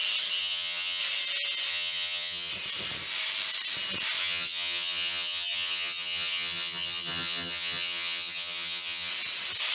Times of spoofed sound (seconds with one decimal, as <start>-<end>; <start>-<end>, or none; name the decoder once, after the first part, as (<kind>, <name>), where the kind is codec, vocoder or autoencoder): 0.4-1.0 (vocoder, HiFi-GAN); 1.7-2.5; 4.2-9.1